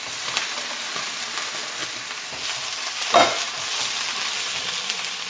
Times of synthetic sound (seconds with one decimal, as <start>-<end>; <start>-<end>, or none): none